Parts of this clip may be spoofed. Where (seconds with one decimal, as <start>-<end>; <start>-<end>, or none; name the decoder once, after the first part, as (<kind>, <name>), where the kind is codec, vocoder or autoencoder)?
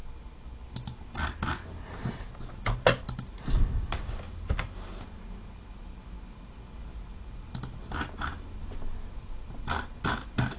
none